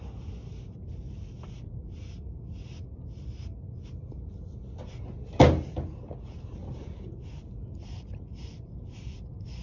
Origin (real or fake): real